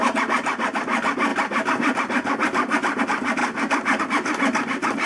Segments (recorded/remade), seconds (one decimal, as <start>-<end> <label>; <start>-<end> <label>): 0.0-3.4 remade; 3.4-4.0 recorded; 4.0-5.1 remade